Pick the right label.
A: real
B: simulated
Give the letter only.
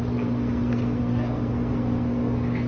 B